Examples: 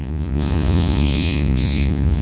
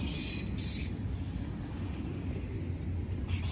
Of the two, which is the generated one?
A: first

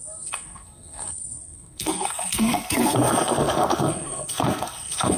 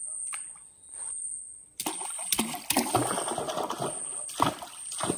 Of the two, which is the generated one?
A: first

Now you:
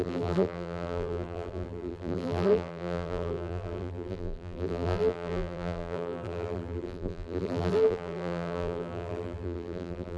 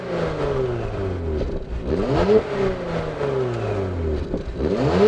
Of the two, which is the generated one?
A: first